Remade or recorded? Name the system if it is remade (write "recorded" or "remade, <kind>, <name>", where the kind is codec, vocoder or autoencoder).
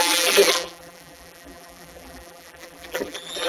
remade, vocoder, BigVGAN v2